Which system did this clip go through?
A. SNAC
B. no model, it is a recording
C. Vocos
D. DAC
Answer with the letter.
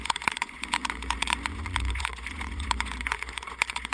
C